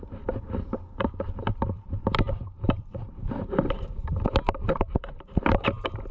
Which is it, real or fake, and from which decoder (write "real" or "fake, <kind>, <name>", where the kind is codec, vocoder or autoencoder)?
fake, vocoder, BigVGAN v2